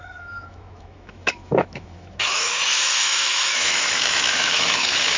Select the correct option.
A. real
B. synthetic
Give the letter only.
B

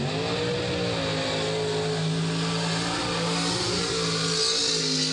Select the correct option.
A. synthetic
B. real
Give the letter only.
B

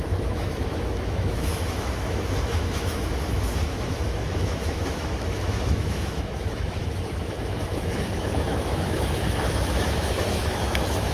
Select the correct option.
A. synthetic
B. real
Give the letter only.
A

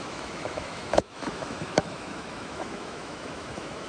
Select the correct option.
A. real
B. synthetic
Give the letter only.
B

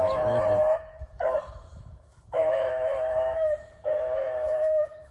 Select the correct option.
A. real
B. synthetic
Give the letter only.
B